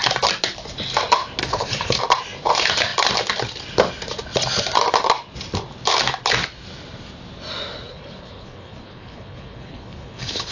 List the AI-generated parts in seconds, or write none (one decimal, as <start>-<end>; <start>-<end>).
1.4-2.0; 7.9-10.5